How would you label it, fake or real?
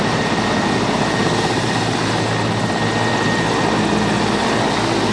real